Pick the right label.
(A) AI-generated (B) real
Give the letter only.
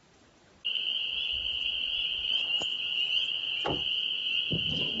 B